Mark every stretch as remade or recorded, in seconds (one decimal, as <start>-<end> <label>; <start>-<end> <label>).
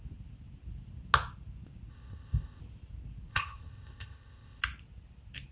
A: 0.0-1.9 recorded; 1.9-2.6 remade; 2.6-3.3 recorded; 3.3-4.6 remade; 4.6-5.5 recorded